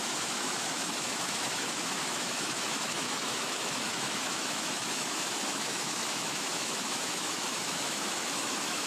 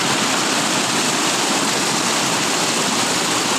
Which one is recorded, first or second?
second